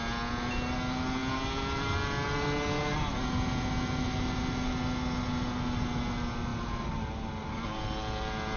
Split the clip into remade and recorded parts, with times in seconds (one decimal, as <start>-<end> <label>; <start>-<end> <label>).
0.0-8.6 recorded

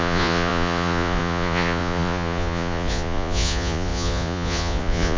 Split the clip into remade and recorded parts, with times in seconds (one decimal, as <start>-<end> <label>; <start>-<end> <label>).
0.0-5.2 remade